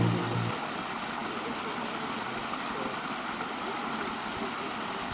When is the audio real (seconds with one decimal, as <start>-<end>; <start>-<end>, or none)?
0.0-5.1